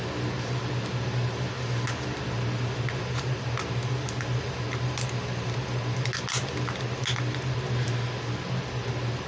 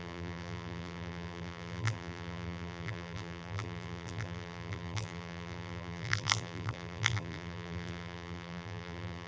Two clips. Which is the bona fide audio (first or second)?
first